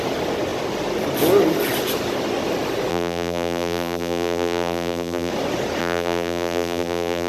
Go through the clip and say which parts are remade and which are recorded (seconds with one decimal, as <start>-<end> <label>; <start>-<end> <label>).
0.0-2.9 recorded; 2.9-5.3 remade; 5.3-5.8 recorded; 5.8-7.3 remade